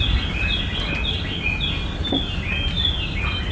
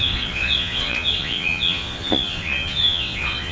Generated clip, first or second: second